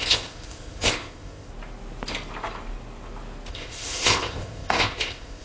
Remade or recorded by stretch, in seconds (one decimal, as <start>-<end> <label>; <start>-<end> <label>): 0.0-1.5 remade; 1.5-3.5 recorded; 3.5-5.4 remade